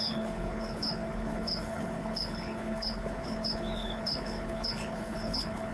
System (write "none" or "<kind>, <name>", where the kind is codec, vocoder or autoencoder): codec, HILCodec